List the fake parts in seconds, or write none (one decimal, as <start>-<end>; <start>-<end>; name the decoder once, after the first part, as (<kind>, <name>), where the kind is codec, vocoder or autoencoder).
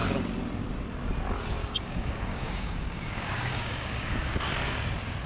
1.6-4.4 (codec, DAC)